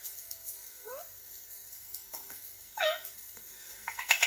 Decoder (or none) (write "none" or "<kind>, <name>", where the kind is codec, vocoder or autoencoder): codec, SNAC